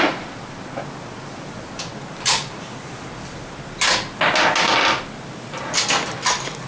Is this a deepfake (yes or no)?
no